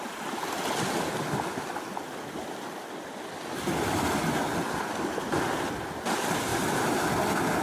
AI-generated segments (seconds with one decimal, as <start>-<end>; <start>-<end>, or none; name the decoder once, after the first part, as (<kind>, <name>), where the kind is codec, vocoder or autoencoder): none